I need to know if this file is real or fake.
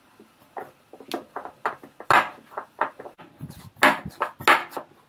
real